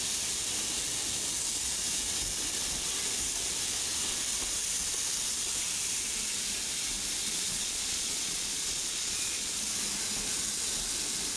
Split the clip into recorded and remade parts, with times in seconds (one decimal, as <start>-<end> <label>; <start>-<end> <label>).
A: 0.0-7.2 recorded; 7.2-9.5 remade; 9.5-11.4 recorded

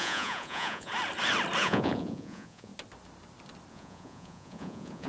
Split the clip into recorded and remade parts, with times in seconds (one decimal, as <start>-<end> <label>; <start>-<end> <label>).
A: 0.0-0.9 remade; 0.9-1.6 recorded; 1.6-2.7 remade; 2.7-3.7 recorded; 3.7-5.1 remade

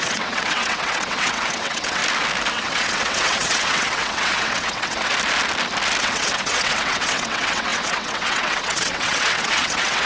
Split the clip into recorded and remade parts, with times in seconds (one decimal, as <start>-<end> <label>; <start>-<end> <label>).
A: 0.0-2.0 remade; 2.0-2.5 recorded; 2.5-5.1 remade; 5.1-6.0 recorded; 6.0-10.1 remade

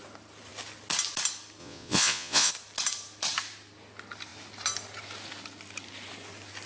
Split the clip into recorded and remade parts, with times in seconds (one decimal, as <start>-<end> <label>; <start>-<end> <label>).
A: 0.0-1.6 recorded; 1.6-2.5 remade; 2.5-6.7 recorded

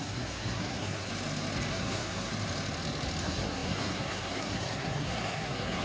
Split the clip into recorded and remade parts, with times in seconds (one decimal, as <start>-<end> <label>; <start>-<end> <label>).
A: 0.0-1.1 remade; 1.1-1.7 recorded; 1.7-2.3 remade; 2.3-3.2 recorded; 3.2-5.8 remade